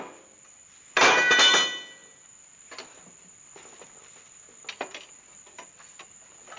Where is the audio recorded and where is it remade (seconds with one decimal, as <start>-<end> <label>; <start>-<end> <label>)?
0.0-6.6 recorded